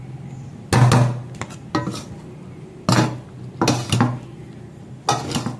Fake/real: real